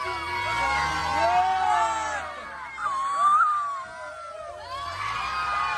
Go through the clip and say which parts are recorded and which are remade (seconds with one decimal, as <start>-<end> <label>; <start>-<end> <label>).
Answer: 0.0-5.8 recorded